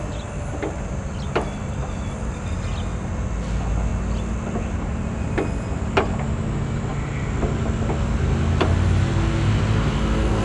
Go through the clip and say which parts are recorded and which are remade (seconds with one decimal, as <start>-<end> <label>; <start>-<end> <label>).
0.0-10.4 recorded